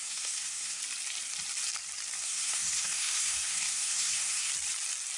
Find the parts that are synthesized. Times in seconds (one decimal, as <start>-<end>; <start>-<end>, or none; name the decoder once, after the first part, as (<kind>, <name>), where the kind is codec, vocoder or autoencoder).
0.0-0.8 (codec, SNAC); 2.2-4.5